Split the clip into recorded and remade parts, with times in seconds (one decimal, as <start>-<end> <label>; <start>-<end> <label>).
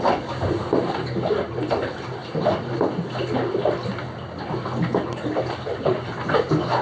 0.0-6.8 recorded